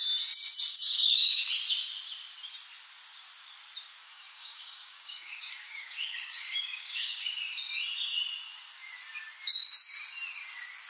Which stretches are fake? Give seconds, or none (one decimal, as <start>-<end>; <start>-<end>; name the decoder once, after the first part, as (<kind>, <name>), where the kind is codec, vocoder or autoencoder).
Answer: 0.7-1.4 (codec, DAC); 4.0-7.4